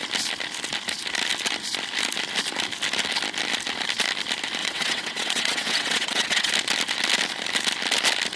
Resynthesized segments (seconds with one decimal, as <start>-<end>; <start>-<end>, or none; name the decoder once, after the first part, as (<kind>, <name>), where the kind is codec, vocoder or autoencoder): 4.6-6.5 (vocoder, WaveNeXt)